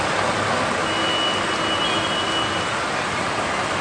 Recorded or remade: recorded